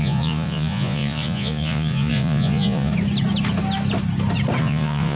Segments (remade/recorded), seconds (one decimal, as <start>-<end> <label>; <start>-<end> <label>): 0.0-2.9 remade; 2.9-4.6 recorded; 4.6-5.2 remade